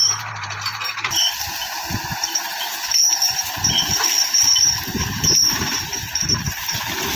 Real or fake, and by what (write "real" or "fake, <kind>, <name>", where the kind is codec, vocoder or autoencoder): fake, vocoder, BigVGAN v2